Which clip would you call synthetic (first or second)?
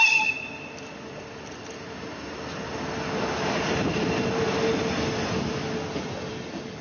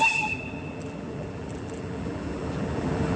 second